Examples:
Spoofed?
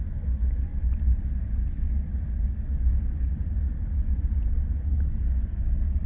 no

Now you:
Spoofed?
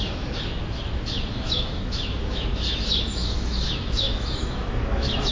yes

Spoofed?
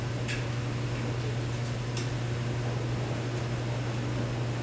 no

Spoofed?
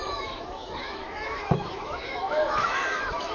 yes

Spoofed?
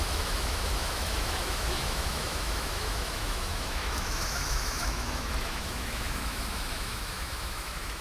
yes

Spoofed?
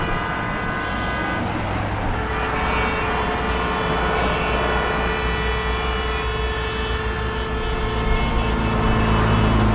no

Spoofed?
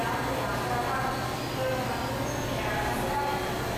no